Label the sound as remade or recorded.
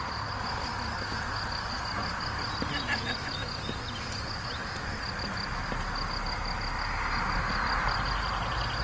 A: recorded